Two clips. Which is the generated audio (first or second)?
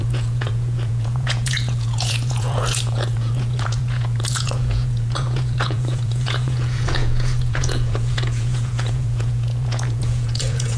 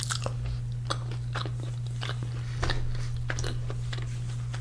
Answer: first